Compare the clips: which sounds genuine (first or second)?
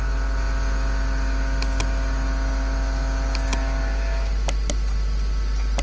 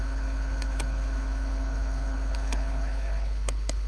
first